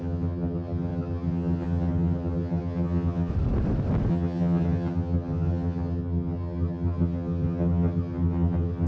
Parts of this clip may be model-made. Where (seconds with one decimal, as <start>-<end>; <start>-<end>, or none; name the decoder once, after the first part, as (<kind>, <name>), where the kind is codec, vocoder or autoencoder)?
0.0-3.3 (vocoder, HiFi-GAN); 4.1-8.9